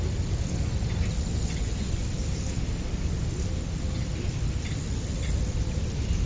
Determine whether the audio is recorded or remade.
recorded